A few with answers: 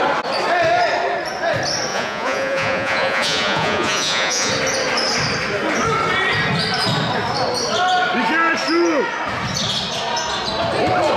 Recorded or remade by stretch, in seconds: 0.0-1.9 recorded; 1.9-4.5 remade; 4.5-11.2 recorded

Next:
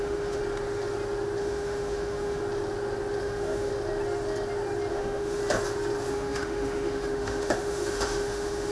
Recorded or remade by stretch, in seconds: 0.0-0.4 remade; 0.4-1.4 recorded; 1.4-2.4 remade; 2.4-3.2 recorded; 3.2-3.7 remade; 3.7-4.9 recorded; 4.9-5.4 remade; 5.4-6.1 recorded; 6.1-8.7 remade

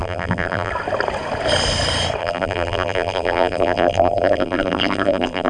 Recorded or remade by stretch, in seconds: 0.0-0.7 remade; 0.7-2.2 recorded; 2.2-5.5 remade

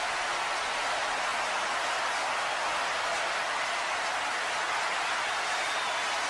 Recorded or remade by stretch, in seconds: 0.0-6.3 recorded